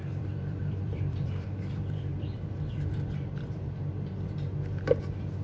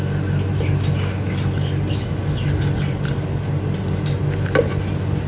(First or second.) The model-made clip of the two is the first